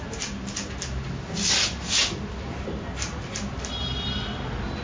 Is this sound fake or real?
real